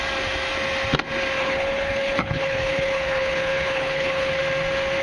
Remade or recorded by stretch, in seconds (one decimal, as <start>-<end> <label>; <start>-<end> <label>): 0.0-1.4 recorded; 1.4-4.4 remade; 4.4-5.0 recorded